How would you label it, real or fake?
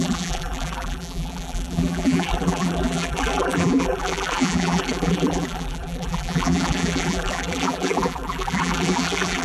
fake